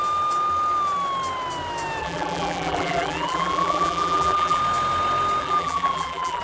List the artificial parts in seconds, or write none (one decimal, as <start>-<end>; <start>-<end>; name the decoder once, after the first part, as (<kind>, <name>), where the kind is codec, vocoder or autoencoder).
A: 2.0-4.6 (vocoder, BigVGAN v2); 5.4-6.4